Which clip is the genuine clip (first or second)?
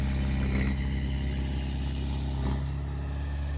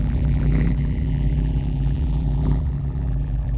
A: first